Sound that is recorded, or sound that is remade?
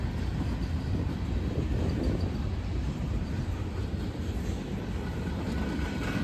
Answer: recorded